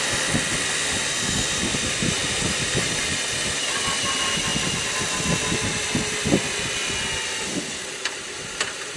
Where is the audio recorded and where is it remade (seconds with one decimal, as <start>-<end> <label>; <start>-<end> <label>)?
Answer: 0.0-2.2 recorded; 2.2-3.2 remade; 3.2-9.0 recorded